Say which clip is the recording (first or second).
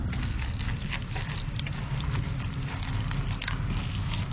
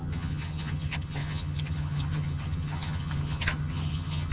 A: first